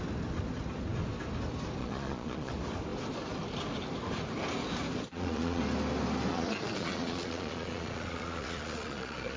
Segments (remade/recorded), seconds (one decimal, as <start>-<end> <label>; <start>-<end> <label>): 0.0-1.8 recorded; 1.8-2.5 remade; 2.5-5.1 recorded; 5.1-5.6 remade; 5.6-6.3 recorded; 6.3-9.4 remade